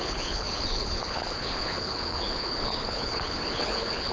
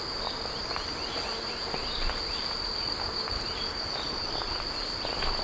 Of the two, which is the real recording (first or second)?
second